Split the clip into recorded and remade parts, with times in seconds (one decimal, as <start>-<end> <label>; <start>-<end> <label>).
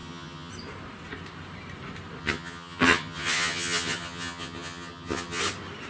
0.0-0.5 remade; 0.5-2.2 recorded; 2.2-5.4 remade; 5.4-5.9 recorded